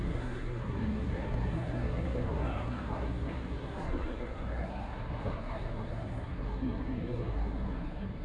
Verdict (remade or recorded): remade